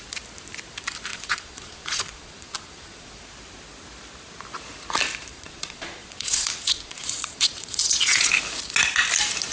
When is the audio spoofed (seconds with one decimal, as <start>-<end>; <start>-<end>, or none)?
1.1-3.1; 5.3-8.3